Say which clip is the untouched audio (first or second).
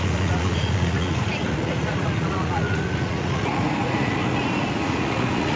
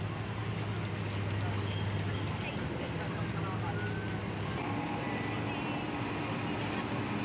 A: second